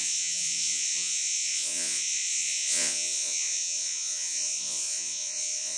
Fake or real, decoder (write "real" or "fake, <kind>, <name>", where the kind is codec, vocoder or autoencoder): fake, vocoder, Vocos